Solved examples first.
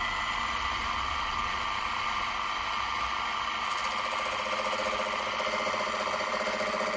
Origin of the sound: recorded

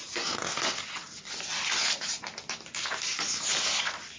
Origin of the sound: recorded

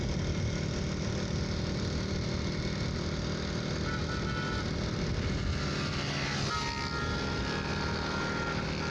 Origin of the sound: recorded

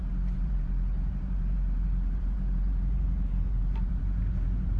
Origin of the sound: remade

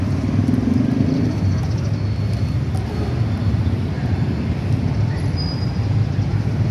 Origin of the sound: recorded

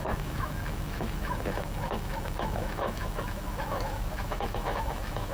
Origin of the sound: remade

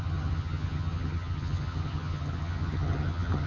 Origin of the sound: remade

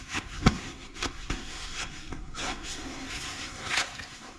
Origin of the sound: remade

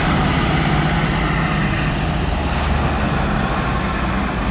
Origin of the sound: recorded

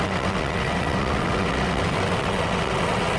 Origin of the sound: remade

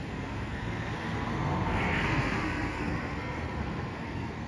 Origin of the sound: remade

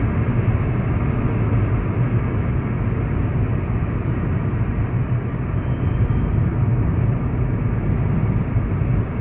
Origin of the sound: recorded